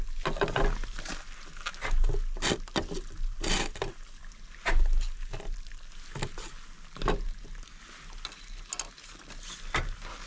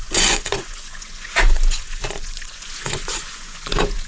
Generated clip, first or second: second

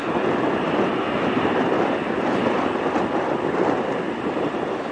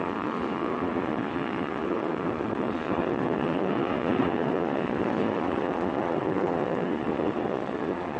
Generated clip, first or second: second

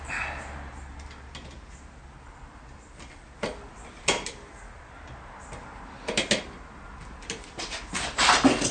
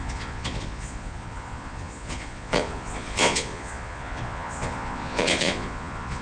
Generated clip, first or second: second